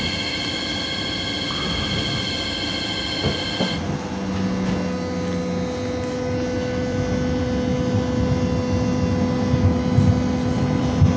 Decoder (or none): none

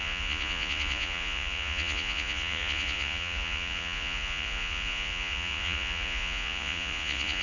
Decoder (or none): vocoder, Vocos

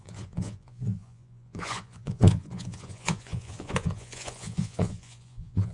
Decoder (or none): vocoder, Vocos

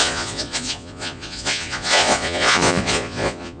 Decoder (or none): vocoder, Vocos